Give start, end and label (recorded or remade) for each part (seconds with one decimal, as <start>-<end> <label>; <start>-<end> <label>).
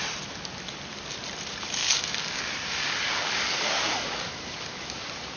0.0-1.8 recorded; 1.8-5.0 remade; 5.0-5.4 recorded